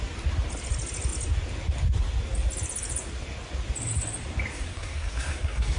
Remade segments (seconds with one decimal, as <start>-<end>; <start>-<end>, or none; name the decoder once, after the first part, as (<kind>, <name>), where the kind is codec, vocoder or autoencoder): 4.5-5.8 (codec, SNAC)